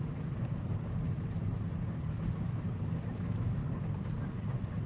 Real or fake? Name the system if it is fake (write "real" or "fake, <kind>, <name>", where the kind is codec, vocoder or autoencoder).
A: fake, vocoder, BigVGAN v2